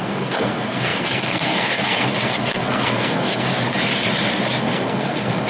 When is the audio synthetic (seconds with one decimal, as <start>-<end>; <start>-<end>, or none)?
0.0-3.5; 4.6-5.5

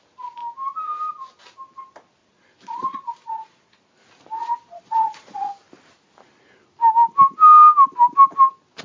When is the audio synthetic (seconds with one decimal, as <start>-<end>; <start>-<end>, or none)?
2.2-3.8; 4.4-5.5

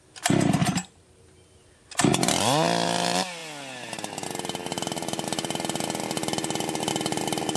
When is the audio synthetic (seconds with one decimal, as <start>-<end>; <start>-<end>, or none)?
0.6-2.1

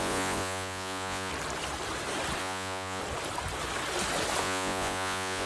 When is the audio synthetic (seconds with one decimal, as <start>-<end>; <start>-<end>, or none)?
0.0-1.3; 2.4-3.0; 4.4-5.5

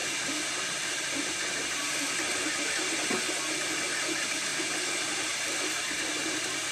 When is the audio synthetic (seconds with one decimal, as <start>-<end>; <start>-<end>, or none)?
0.0-2.0; 4.5-6.1

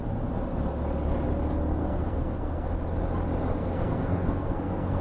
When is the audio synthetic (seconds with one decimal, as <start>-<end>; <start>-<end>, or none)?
1.8-2.7; 3.6-5.0